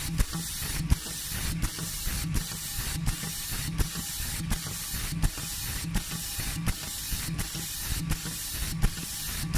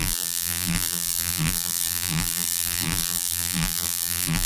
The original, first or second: first